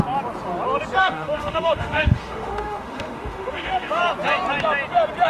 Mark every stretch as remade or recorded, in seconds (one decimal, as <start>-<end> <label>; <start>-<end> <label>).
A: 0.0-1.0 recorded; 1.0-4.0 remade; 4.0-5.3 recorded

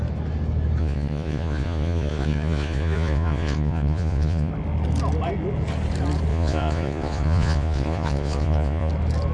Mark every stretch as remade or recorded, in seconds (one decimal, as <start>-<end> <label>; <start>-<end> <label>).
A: 0.0-0.8 recorded; 0.8-4.5 remade; 4.5-6.3 recorded; 6.3-8.9 remade; 8.9-9.3 recorded

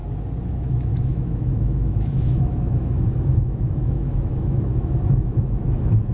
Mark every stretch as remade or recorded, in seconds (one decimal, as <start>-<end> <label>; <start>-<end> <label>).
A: 0.0-0.5 recorded; 0.5-6.1 remade

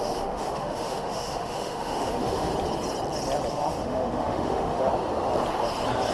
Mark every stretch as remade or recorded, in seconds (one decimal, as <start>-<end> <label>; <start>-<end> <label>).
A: 0.0-2.5 remade; 2.5-3.5 recorded; 3.5-4.9 remade; 4.9-6.1 recorded

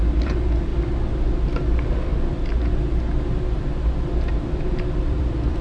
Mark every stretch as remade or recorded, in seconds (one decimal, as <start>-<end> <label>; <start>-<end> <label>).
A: 0.0-0.7 remade; 0.7-1.7 recorded; 1.7-2.1 remade; 2.1-4.3 recorded; 4.3-5.6 remade